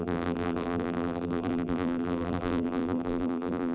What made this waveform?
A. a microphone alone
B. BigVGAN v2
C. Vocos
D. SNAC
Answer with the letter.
B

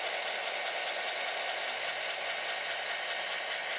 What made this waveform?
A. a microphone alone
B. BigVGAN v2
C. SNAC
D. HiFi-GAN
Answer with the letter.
A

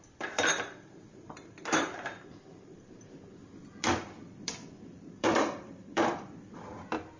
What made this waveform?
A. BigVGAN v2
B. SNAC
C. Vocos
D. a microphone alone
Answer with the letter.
A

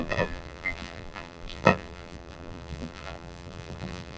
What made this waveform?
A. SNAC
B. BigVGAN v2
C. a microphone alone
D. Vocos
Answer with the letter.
B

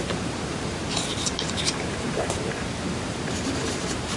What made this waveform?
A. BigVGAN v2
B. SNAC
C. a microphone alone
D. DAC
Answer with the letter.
A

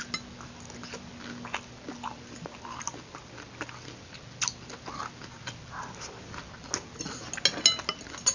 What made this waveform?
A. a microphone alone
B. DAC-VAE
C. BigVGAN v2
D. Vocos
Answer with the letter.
A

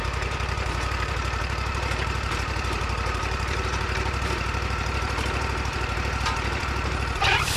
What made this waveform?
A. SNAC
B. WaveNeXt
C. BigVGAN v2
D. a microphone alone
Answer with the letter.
C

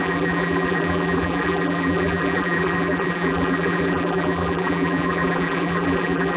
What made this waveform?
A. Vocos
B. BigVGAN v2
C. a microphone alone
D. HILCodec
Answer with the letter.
B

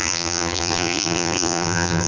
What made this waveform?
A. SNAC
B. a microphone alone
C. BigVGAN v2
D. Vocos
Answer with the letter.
C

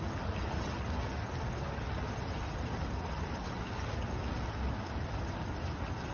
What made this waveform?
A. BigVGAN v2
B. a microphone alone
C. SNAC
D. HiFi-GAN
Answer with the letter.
B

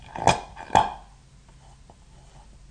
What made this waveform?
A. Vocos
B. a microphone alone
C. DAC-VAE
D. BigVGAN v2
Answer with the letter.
B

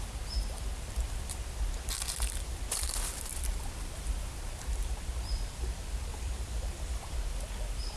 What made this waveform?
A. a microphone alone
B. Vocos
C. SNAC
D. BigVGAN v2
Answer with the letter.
D